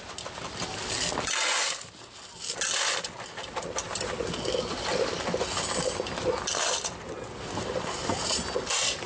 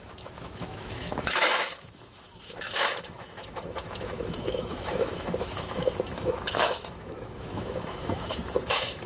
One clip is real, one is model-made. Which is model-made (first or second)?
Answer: second